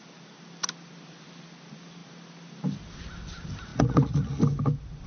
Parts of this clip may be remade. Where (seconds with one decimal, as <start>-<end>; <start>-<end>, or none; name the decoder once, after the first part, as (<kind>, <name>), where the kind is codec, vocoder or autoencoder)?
3.7-4.4 (vocoder, Vocos)